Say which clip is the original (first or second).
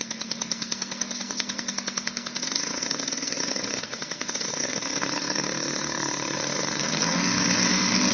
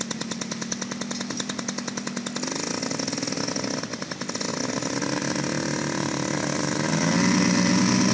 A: second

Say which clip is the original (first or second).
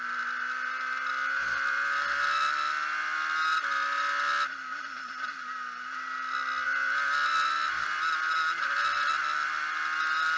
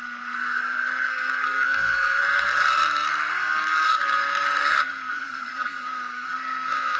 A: first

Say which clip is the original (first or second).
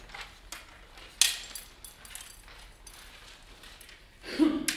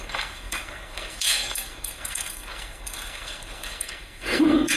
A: first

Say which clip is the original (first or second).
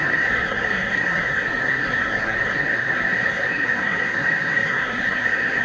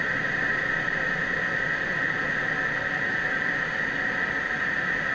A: second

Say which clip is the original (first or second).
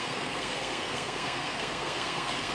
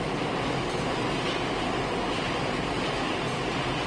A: second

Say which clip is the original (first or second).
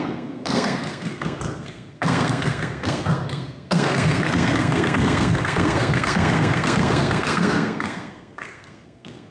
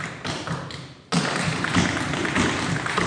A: second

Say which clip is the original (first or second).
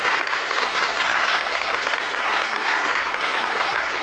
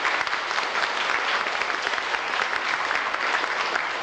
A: second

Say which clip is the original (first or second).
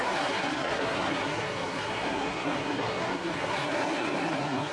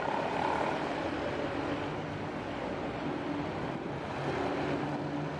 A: second